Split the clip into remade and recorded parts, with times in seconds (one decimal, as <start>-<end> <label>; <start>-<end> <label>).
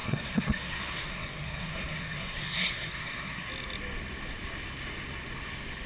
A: 0.0-3.5 remade; 3.5-5.9 recorded